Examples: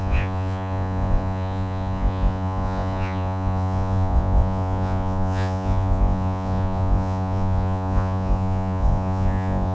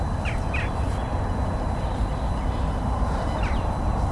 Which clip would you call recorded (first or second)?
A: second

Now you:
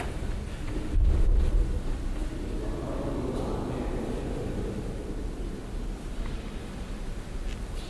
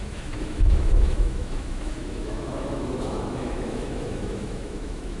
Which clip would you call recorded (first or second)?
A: first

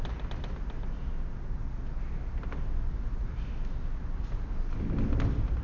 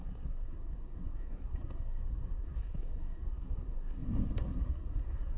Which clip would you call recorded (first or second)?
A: first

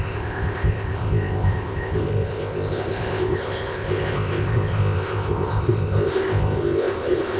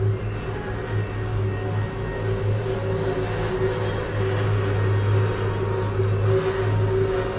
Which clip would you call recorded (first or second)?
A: second